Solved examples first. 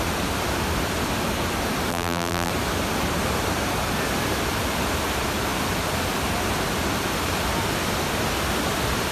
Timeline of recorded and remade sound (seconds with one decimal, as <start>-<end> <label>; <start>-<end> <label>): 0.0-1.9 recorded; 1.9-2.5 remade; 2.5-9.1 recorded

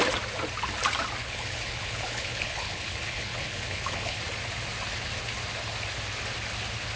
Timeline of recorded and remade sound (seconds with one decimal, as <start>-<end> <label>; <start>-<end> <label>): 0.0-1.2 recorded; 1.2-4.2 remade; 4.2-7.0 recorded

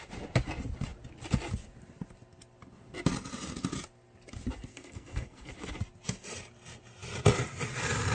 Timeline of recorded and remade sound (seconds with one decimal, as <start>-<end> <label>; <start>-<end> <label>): 0.0-4.7 recorded; 4.7-5.5 remade; 5.5-8.1 recorded